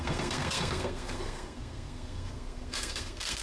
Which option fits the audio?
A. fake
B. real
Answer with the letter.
A